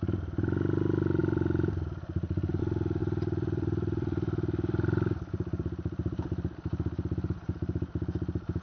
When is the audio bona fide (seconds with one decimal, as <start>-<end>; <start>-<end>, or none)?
0.0-1.2; 2.5-3.0; 6.6-8.6